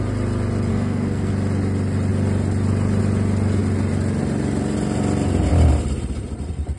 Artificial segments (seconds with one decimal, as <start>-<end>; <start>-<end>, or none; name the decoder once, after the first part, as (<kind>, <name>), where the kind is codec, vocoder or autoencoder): 0.7-1.3 (codec, SNAC)